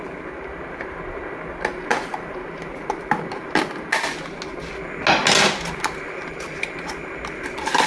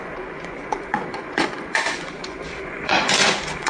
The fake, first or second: second